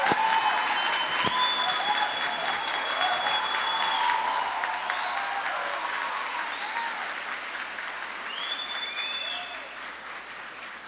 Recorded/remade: recorded